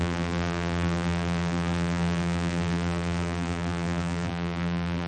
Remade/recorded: remade